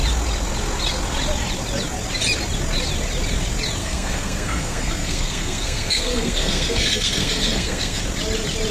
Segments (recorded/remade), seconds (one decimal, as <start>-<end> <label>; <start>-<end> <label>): 0.0-3.8 recorded; 3.8-8.0 remade; 8.0-8.7 recorded